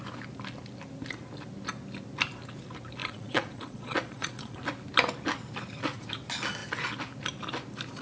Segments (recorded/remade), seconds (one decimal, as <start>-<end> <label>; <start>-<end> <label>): 0.0-3.0 recorded; 3.0-4.6 remade; 4.6-8.0 recorded